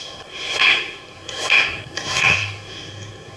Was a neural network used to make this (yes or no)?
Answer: yes